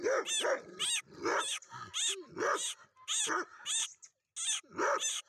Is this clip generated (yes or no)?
no